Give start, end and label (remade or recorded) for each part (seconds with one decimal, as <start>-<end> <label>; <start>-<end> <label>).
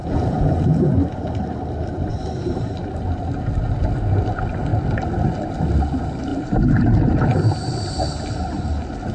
0.0-0.9 remade; 0.9-9.1 recorded